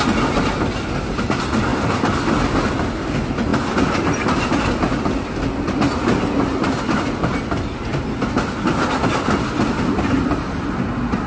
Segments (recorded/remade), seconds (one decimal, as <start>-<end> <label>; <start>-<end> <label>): 0.0-11.3 recorded